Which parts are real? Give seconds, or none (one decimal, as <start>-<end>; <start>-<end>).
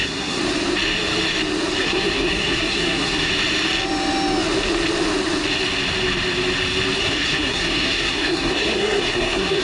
0.4-1.8; 3.3-7.0